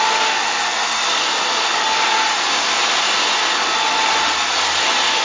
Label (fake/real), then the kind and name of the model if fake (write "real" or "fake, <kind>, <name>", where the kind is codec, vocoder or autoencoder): real